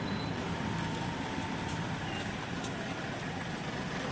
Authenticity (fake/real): real